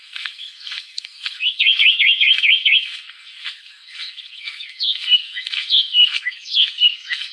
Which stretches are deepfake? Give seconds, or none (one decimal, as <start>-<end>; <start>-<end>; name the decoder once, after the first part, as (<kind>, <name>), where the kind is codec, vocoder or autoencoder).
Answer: 0.0-7.3 (codec, SNAC)